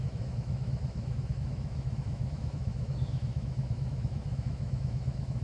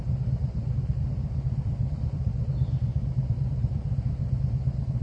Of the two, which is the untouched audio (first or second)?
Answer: second